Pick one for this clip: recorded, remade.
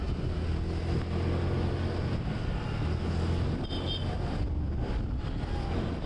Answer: recorded